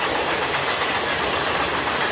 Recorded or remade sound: recorded